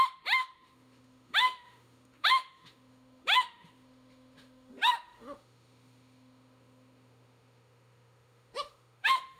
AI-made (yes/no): yes